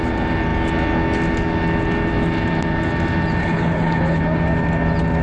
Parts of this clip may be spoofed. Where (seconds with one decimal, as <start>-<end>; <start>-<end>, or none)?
3.4-4.2